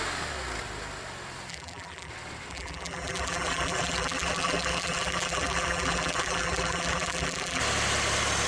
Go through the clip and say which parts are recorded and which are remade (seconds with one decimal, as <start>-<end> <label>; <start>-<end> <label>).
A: 0.0-1.5 recorded; 1.5-2.1 remade; 2.1-2.5 recorded; 2.5-7.6 remade; 7.6-8.5 recorded